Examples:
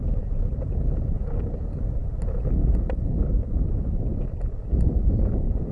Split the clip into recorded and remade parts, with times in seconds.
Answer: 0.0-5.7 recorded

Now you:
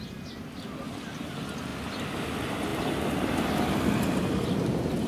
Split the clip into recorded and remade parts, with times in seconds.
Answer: 0.0-5.1 recorded

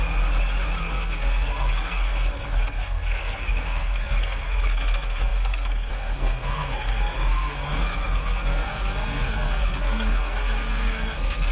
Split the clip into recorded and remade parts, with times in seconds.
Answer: 0.0-0.8 recorded; 0.8-11.5 remade